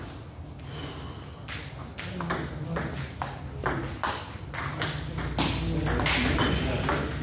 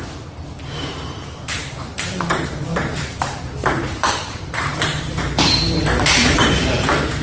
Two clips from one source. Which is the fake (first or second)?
second